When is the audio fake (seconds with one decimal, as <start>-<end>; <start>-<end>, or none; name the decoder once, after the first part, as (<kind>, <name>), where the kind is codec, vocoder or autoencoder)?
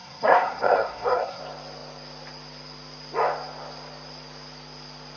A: 0.0-1.4 (codec, SNAC)